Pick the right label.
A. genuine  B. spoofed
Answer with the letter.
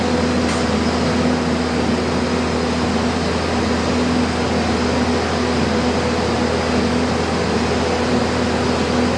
A